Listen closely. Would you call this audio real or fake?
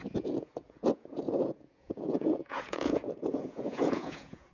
fake